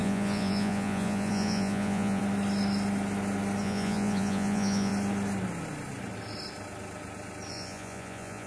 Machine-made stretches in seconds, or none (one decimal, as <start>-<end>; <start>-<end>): 0.0-2.2; 3.6-4.9; 7.5-8.5